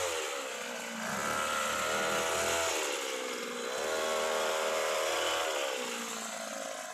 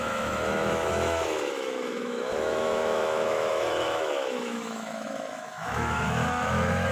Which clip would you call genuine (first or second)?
first